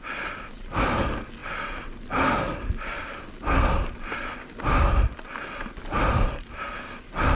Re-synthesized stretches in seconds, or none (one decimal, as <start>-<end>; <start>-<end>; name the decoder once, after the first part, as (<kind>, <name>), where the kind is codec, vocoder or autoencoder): none